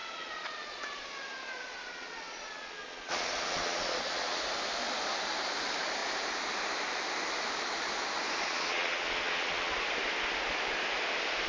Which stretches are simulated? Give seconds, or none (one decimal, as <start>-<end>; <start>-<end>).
0.0-4.4; 8.5-9.7